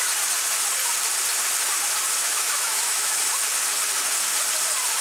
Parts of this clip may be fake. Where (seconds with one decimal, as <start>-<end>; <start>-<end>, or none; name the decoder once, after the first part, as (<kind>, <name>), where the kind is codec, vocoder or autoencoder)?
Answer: 2.2-3.2 (autoencoder, DAC-VAE)